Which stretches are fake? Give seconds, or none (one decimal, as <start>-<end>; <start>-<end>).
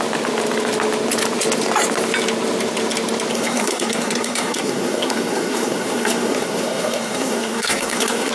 3.3-8.3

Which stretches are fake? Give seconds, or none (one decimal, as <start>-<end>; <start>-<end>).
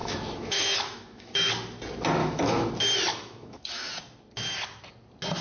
0.0-1.5; 2.2-2.7; 3.1-3.9